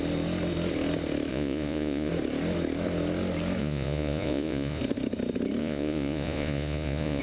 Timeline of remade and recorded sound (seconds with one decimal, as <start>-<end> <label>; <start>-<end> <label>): 0.0-1.3 recorded; 1.3-2.1 remade; 2.1-3.6 recorded; 3.6-4.8 remade; 4.8-5.6 recorded; 5.6-7.2 remade